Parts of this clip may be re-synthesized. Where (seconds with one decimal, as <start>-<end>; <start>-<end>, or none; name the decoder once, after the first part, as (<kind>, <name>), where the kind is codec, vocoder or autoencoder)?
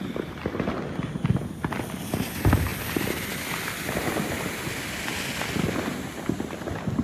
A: none